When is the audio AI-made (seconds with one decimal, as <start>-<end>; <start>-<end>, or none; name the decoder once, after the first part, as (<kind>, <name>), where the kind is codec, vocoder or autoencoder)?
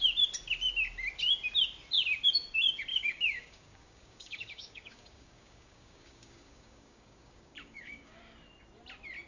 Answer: 2.9-8.2 (codec, DAC)